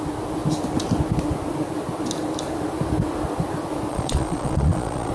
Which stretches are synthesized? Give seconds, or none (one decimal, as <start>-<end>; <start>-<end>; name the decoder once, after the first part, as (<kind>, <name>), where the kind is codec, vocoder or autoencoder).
3.9-5.1 (vocoder, Vocos)